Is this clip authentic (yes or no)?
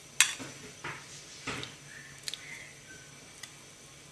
yes